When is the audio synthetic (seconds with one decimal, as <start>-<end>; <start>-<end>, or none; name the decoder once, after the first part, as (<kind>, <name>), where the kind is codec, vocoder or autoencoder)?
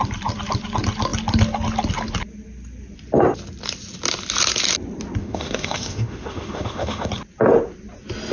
5.2-7.1 (autoencoder, DAC-VAE)